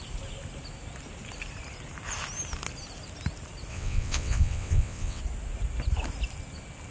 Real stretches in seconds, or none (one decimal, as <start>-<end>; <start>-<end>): 0.0-3.7; 5.2-6.9